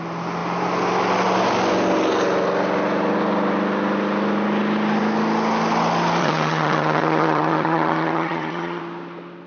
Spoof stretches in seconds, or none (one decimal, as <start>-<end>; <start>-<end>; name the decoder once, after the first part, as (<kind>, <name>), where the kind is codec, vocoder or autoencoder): 6.2-8.8 (vocoder, HiFi-GAN)